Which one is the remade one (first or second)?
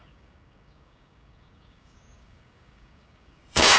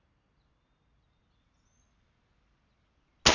first